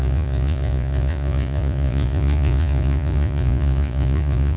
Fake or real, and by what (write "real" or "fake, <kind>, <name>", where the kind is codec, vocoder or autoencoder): fake, vocoder, Vocos